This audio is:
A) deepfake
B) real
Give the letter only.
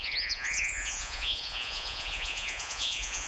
A